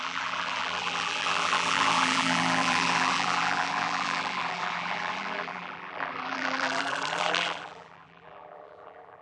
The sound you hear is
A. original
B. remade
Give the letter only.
B